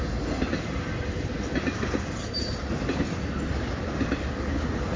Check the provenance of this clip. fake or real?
real